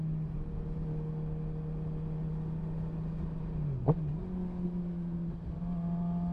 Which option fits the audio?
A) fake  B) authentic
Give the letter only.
B